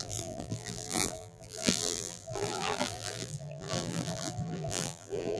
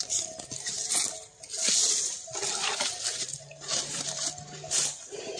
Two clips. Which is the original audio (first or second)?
second